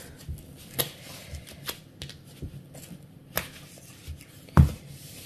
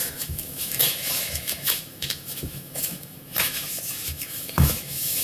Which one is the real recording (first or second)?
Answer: first